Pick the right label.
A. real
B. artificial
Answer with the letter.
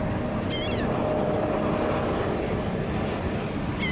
A